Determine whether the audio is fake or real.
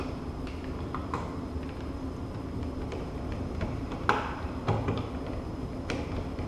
real